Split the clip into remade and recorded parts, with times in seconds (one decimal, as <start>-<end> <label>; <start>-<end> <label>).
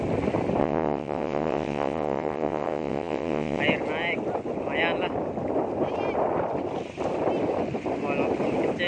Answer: 0.0-0.6 recorded; 0.6-3.6 remade; 3.6-8.9 recorded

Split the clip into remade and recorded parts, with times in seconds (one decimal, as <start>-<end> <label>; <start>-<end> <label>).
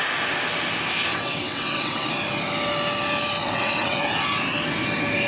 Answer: 0.0-1.1 recorded; 1.1-2.1 remade; 2.1-3.4 recorded; 3.4-4.0 remade; 4.0-5.3 recorded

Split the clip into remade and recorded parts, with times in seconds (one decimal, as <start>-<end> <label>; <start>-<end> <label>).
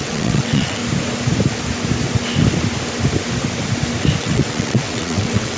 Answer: 0.0-0.8 remade; 0.8-4.2 recorded; 4.2-5.6 remade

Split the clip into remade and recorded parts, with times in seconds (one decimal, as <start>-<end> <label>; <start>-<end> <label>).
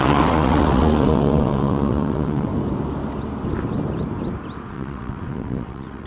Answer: 0.0-2.5 remade; 2.5-4.7 recorded; 4.7-6.1 remade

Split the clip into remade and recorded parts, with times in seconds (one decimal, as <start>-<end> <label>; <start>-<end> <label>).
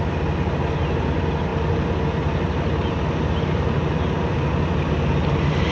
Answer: 0.0-5.7 recorded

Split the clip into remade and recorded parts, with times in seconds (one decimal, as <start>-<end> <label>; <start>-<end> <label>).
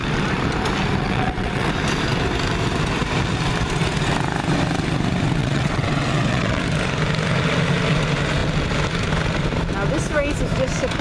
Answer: 0.0-1.0 recorded; 1.0-1.7 remade; 1.7-5.4 recorded; 5.4-6.6 remade; 6.6-11.0 recorded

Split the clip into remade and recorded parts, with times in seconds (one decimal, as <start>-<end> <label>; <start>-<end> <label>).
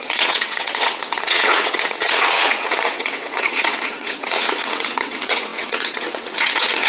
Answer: 0.0-6.9 remade